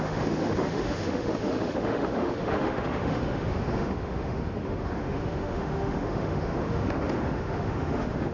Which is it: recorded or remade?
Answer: remade